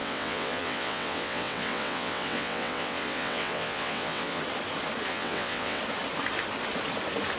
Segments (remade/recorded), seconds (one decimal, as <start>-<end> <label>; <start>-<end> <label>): 0.0-4.4 remade; 4.4-5.1 recorded; 5.1-5.8 remade; 5.8-7.4 recorded